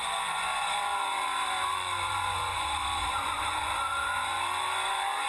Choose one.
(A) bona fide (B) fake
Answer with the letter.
B